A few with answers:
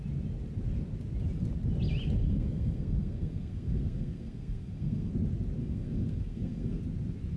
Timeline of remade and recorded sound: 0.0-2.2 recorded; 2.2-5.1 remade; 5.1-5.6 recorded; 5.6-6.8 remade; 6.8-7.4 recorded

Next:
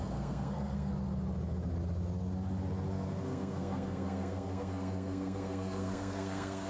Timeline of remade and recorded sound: 0.0-0.9 remade; 0.9-2.9 recorded; 2.9-6.7 remade

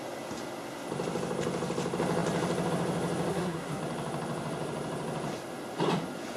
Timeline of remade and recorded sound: 0.0-3.3 recorded; 3.3-3.8 remade; 3.8-6.4 recorded

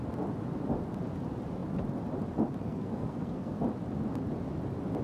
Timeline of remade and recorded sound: 0.0-2.6 recorded; 2.6-3.6 remade; 3.6-5.0 recorded

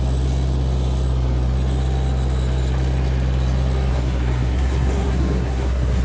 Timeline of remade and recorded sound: 0.0-3.9 recorded; 3.9-6.0 remade